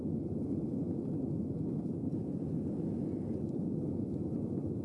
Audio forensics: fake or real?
real